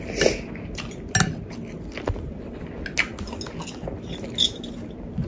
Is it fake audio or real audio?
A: real